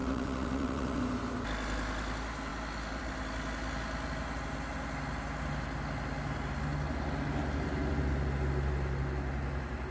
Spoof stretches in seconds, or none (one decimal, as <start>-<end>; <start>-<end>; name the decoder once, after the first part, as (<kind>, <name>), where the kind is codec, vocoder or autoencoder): 0.0-1.0 (vocoder, WaveNeXt)